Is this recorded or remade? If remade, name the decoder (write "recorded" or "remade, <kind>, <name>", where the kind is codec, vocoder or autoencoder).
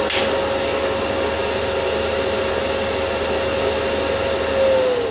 recorded